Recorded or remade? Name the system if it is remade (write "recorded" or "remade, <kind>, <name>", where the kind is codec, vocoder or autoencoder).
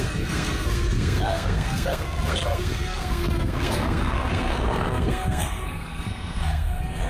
remade, codec, SNAC